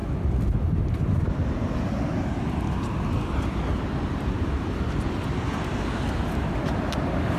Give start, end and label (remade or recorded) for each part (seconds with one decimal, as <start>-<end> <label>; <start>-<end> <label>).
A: 0.0-7.4 recorded